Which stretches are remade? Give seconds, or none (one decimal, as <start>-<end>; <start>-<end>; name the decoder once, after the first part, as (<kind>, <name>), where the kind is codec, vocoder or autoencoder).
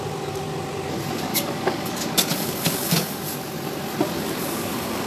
1.3-3.2 (codec, DAC); 4.4-5.1